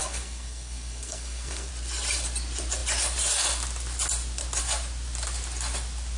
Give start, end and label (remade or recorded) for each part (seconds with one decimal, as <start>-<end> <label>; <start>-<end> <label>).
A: 0.0-1.7 remade; 1.7-6.2 recorded